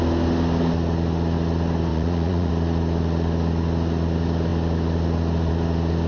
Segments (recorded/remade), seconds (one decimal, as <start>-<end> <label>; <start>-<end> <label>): 0.0-1.9 recorded; 1.9-2.5 remade; 2.5-6.1 recorded